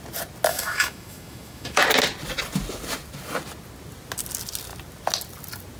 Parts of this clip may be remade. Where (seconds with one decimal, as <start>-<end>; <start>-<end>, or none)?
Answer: 0.5-1.8

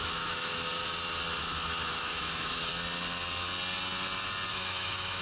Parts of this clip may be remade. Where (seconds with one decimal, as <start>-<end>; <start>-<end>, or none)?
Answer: 0.0-0.5; 1.4-2.7; 4.5-5.2

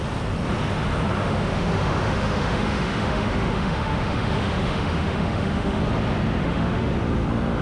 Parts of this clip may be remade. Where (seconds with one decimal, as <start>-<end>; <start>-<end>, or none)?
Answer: 1.2-5.8; 6.4-6.9

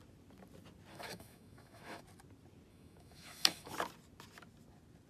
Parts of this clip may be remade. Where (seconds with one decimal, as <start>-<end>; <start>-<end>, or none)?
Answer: 0.9-2.0; 2.7-3.7

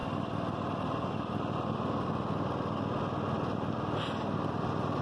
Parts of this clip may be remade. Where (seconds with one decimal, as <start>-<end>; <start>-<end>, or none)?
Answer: none

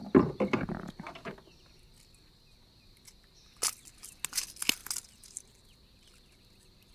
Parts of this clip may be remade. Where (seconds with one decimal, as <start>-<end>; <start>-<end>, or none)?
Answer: none

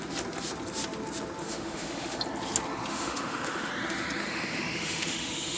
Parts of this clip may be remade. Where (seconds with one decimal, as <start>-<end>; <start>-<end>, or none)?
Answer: 1.4-2.2; 2.9-3.7; 4.2-5.6

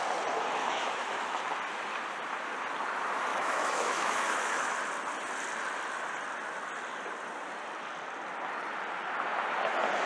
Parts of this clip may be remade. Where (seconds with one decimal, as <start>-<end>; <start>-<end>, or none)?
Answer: 0.6-1.4; 3.3-4.8